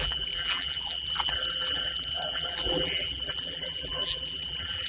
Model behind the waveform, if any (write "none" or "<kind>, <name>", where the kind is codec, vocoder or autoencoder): vocoder, BigVGAN v2